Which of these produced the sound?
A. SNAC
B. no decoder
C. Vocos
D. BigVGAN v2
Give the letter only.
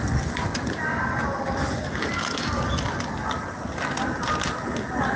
B